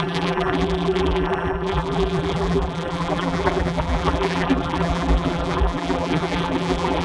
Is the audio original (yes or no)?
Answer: no